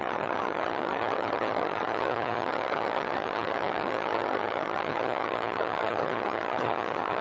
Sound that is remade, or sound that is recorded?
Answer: remade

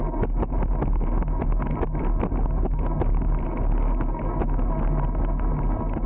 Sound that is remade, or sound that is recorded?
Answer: recorded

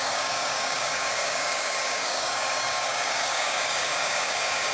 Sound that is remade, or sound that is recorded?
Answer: remade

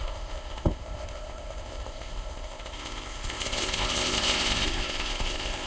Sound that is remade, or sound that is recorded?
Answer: remade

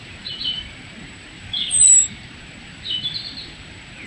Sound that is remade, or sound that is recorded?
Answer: remade